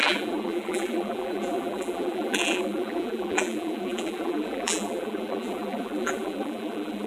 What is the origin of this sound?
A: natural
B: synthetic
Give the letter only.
B